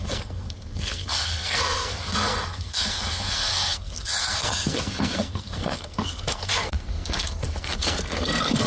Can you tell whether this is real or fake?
fake